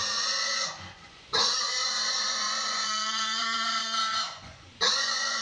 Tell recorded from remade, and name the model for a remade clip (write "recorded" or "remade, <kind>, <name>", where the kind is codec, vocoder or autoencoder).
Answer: remade, vocoder, Vocos